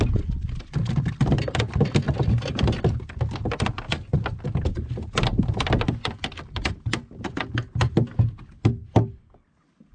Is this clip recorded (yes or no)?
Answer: yes